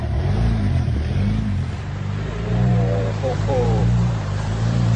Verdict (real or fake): fake